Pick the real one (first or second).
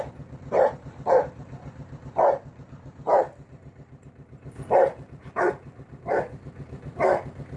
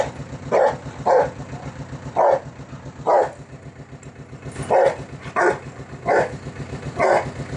second